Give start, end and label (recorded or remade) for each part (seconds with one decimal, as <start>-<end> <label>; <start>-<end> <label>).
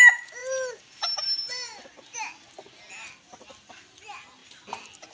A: 0.0-5.1 recorded